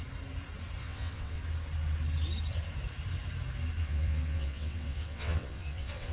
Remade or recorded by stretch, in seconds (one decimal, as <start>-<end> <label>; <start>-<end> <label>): 0.0-0.8 recorded; 0.8-1.4 remade; 1.4-3.8 recorded; 3.8-6.1 remade